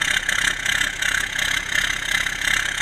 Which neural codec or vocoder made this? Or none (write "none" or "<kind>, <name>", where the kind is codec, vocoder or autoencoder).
vocoder, Vocos